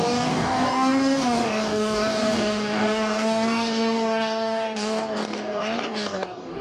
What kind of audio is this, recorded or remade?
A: remade